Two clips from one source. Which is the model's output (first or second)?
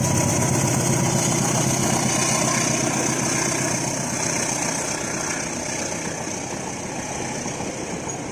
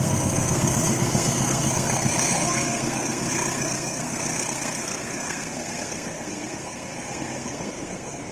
second